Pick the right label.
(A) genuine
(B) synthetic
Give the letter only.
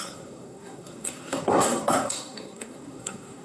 B